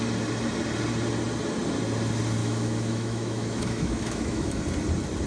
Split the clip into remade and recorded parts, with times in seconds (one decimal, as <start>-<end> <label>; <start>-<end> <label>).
0.0-2.4 recorded; 2.4-4.6 remade; 4.6-5.3 recorded